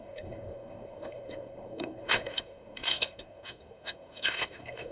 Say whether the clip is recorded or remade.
remade